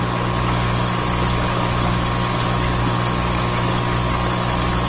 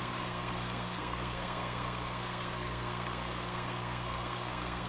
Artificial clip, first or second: second